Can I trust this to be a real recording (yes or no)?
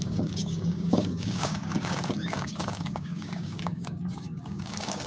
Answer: no